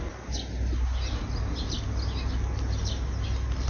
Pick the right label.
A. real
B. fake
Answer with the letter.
A